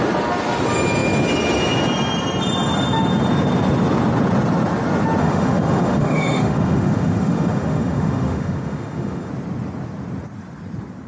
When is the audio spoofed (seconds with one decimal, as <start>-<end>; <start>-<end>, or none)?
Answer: 5.2-9.3